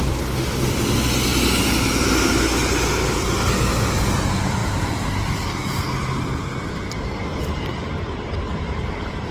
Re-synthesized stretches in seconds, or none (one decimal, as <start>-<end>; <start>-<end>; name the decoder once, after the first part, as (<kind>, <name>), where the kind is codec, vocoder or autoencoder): none